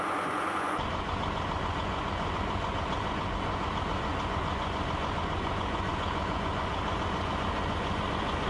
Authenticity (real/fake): fake